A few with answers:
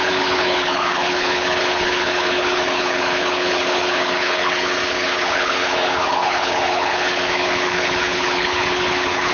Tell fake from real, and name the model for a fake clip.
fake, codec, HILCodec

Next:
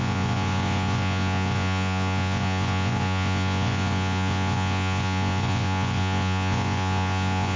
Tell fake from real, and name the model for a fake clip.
fake, vocoder, Vocos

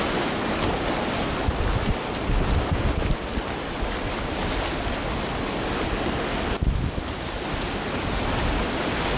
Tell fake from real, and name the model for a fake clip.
real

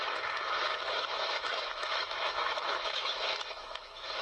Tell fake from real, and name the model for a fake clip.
fake, autoencoder, DAC-VAE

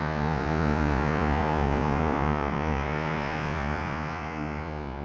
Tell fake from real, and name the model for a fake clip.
fake, vocoder, Vocos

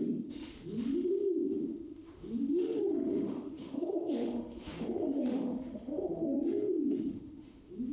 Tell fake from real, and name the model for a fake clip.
fake, autoencoder, DAC-VAE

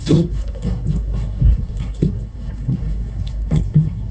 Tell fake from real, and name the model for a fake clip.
fake, codec, SNAC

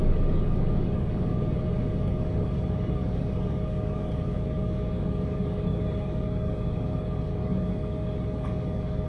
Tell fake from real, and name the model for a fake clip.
fake, codec, DAC